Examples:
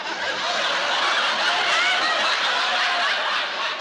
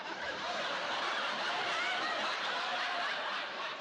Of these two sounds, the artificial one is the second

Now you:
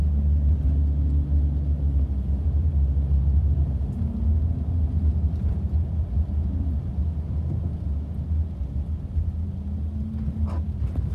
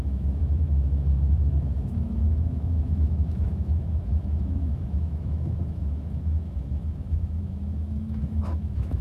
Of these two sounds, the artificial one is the second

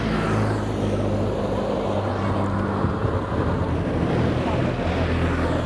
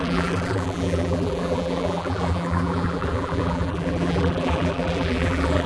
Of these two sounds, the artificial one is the second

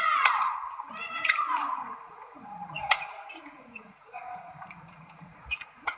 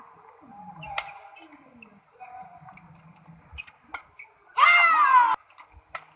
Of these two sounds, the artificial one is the first